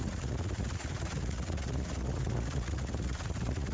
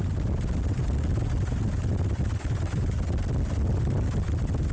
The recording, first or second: second